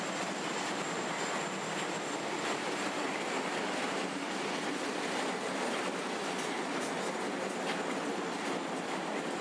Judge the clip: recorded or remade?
recorded